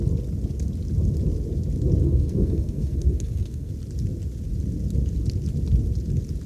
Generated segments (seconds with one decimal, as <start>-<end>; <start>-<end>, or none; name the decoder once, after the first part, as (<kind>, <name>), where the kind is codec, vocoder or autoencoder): 2.0-3.7 (codec, SNAC)